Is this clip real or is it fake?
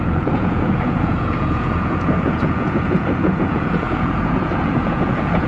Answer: fake